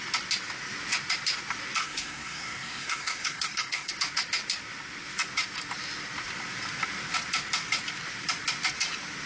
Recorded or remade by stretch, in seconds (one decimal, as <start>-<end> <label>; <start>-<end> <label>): 0.0-1.8 recorded; 1.8-3.9 remade; 3.9-9.3 recorded